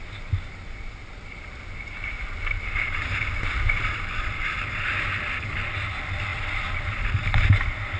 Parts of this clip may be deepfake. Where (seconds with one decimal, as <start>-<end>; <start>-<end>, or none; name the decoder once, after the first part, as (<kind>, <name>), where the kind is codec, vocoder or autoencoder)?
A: none